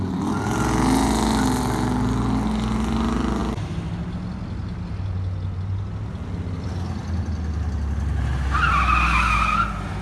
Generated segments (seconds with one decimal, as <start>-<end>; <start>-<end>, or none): none